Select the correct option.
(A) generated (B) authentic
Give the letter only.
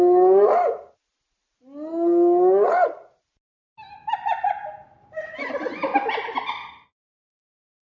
B